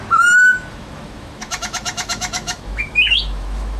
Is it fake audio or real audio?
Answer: fake